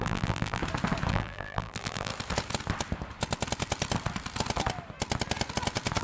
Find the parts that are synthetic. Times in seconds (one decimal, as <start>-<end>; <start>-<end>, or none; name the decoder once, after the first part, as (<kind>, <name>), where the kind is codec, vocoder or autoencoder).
0.0-0.6 (vocoder, BigVGAN v2); 1.1-2.1